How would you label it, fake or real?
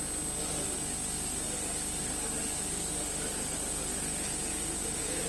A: real